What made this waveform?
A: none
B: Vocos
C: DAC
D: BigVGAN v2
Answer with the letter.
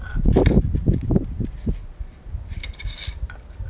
A